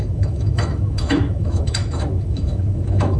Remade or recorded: remade